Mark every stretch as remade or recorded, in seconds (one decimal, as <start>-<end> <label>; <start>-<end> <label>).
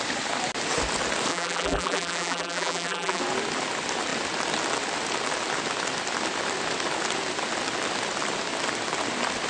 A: 0.0-1.3 recorded; 1.3-3.2 remade; 3.2-9.5 recorded